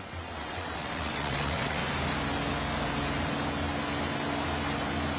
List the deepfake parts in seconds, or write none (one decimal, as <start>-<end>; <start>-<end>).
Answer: 0.0-1.8